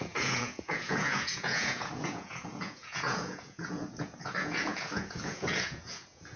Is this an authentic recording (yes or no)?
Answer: no